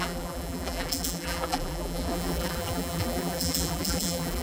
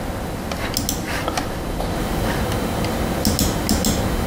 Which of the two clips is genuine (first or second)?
second